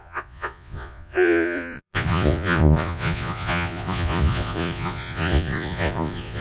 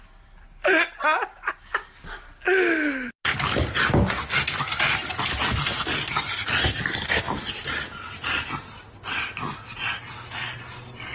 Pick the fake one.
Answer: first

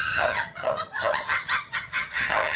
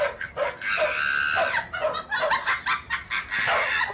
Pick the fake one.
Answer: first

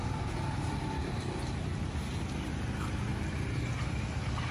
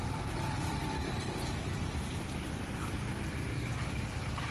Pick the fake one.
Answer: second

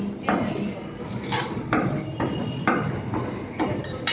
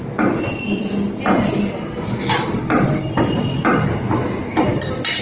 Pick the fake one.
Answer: first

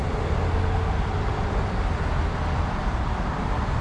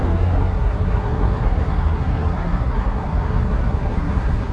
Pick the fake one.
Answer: second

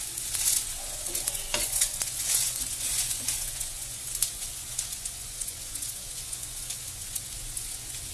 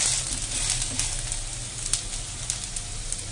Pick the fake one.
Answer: first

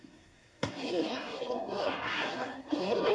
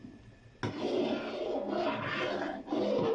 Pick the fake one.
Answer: first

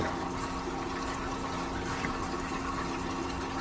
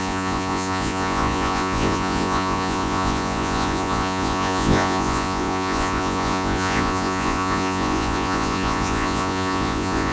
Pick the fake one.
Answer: second